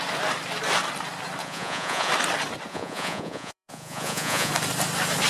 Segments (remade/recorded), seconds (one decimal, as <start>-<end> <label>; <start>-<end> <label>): 0.0-1.4 recorded; 1.4-2.1 remade; 2.1-2.7 recorded; 2.7-4.5 remade; 4.5-5.3 recorded